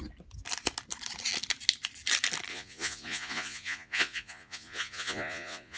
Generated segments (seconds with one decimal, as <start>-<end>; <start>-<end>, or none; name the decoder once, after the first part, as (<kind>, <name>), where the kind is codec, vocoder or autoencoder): 2.5-5.8 (vocoder, Vocos)